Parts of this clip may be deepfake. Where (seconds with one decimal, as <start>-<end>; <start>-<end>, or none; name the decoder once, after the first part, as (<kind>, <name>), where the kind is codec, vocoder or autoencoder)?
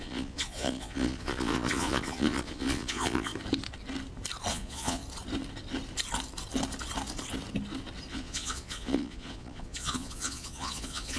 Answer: 0.0-3.3 (vocoder, Vocos); 4.5-5.0; 8.1-11.2